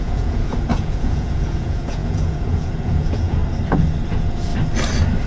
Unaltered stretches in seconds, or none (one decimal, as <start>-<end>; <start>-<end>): 3.4-4.1; 4.5-5.3